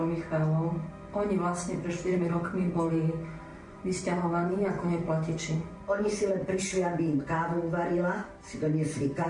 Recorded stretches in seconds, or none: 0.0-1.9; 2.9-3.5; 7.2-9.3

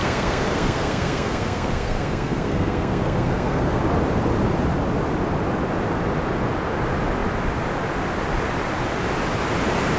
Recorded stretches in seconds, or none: 3.8-10.0

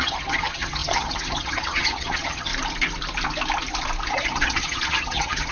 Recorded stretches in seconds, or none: 2.5-4.1

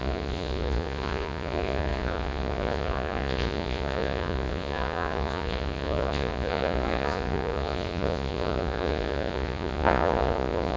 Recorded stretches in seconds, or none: none

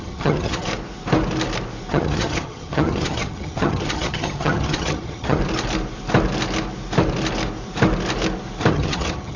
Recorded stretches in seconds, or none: 0.7-1.9; 5.4-8.7

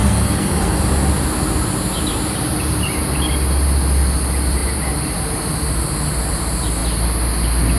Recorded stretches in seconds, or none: 0.8-7.8